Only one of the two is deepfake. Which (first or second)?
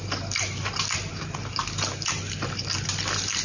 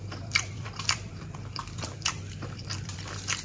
second